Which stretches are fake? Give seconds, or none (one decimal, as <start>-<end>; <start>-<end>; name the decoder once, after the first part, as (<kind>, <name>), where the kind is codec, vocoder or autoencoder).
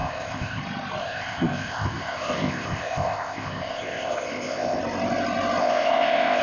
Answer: 0.0-0.6 (codec, ZipCodec); 1.0-4.8; 5.6-6.4